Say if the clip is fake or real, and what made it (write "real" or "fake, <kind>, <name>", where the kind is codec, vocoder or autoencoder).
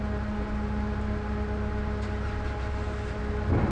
real